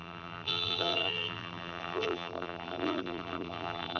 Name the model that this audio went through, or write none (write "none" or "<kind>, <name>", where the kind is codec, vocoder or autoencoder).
vocoder, BigVGAN v2